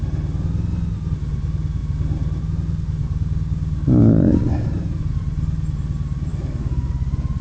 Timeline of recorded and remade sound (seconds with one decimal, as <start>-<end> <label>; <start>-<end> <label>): 0.0-6.3 recorded; 6.3-6.9 remade; 6.9-7.4 recorded